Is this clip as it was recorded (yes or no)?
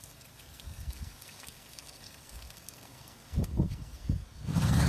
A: no